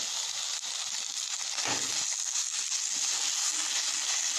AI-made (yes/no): no